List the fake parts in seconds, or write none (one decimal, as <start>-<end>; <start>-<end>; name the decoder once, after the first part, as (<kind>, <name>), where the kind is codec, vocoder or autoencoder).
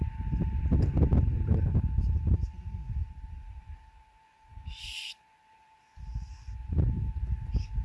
none